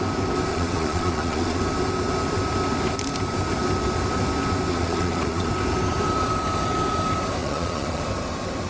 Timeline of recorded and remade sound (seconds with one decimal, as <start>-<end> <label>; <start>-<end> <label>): 0.0-0.5 recorded; 0.5-1.6 remade; 1.6-4.7 recorded; 4.7-5.5 remade; 5.5-7.4 recorded; 7.4-8.0 remade; 8.0-8.7 recorded